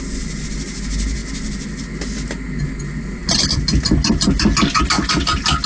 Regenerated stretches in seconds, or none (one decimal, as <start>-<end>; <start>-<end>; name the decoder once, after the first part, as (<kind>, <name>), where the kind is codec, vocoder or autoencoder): none